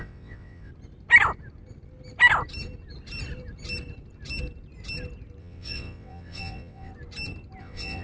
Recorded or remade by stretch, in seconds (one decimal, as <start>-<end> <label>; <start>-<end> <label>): 0.0-0.7 remade; 0.7-5.4 recorded; 5.4-6.9 remade; 6.9-7.6 recorded; 7.6-8.0 remade